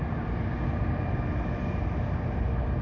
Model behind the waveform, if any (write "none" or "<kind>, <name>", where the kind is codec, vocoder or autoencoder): none